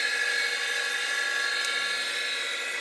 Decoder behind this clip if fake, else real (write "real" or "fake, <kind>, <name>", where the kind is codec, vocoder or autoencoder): real